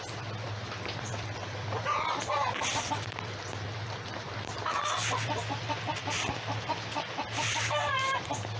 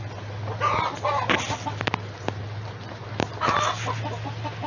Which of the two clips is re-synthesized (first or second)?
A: first